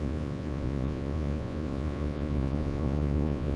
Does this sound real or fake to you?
fake